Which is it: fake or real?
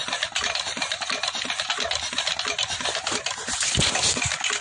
real